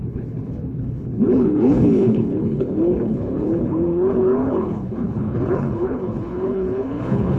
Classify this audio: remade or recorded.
remade